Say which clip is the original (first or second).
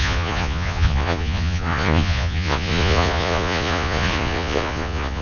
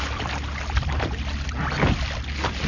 second